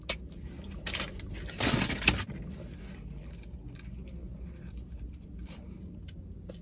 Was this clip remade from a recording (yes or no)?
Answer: no